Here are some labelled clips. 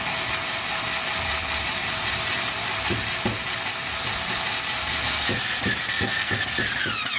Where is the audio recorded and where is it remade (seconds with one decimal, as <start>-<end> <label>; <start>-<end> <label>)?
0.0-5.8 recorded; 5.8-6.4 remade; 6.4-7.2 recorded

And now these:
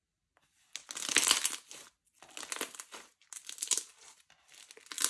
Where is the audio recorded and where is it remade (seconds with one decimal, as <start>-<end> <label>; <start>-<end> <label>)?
0.0-5.1 recorded

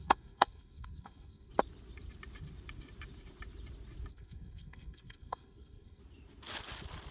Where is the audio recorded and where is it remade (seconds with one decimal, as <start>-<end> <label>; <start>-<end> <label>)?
0.0-1.5 remade; 1.5-4.1 recorded; 4.1-6.0 remade; 6.0-7.1 recorded